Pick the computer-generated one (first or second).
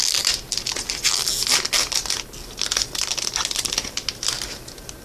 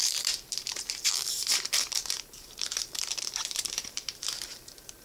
second